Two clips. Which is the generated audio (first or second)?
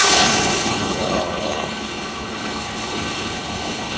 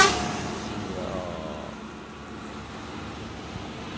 first